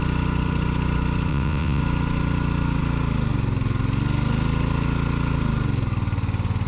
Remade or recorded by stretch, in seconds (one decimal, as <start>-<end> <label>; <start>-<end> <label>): 0.0-1.3 recorded; 1.3-1.8 remade; 1.8-6.7 recorded